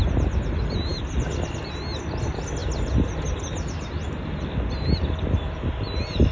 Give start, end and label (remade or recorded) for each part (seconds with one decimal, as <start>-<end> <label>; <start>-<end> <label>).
0.0-6.3 recorded